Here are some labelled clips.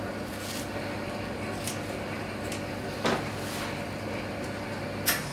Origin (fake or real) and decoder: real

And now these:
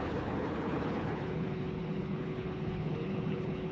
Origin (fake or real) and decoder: fake, codec, HILCodec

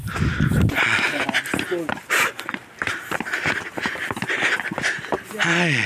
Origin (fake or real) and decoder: real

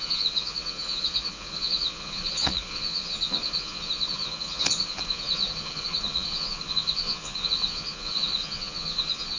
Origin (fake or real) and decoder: fake, vocoder, Vocos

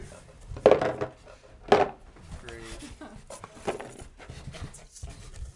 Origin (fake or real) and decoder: real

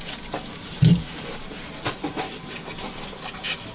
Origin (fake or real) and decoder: real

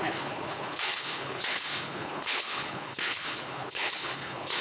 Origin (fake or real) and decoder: fake, codec, HILCodec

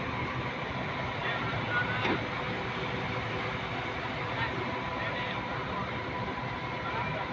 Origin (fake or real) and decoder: real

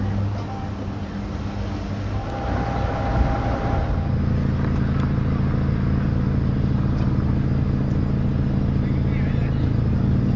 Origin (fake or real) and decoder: real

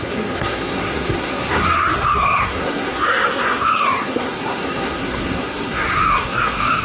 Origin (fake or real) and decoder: fake, codec, SNAC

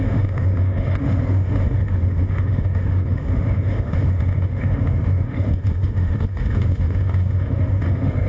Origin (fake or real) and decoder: fake, autoencoder, DAC-VAE